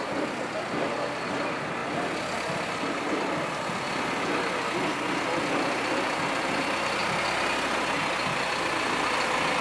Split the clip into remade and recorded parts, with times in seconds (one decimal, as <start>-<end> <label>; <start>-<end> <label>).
0.0-9.6 recorded